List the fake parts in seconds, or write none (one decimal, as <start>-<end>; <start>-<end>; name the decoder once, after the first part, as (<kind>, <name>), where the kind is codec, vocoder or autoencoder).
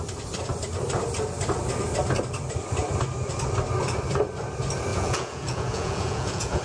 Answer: 4.9-6.6 (vocoder, Vocos)